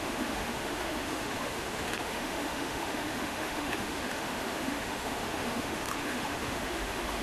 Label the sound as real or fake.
fake